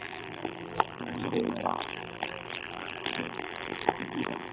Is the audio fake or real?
fake